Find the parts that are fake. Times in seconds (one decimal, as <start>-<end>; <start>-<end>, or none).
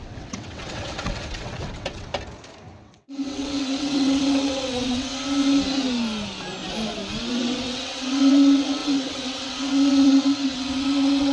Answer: 0.0-2.1; 2.8-5.1; 7.3-11.3